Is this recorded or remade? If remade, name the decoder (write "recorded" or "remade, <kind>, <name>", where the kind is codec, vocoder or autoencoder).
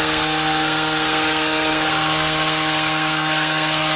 remade, codec, SNAC